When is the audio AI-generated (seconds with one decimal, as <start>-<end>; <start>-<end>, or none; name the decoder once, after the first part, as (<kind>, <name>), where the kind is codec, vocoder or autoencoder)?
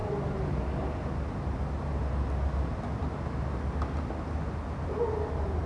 none